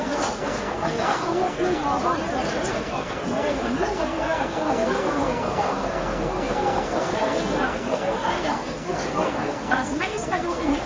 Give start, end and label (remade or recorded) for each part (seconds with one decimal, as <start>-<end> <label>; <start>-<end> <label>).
0.0-1.8 remade; 1.8-2.7 recorded; 2.7-10.9 remade